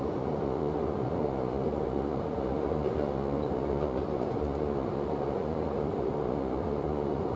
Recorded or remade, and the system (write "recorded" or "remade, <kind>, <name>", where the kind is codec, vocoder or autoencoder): remade, vocoder, Vocos